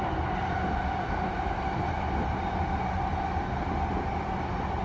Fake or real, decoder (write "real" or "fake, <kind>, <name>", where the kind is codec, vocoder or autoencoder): real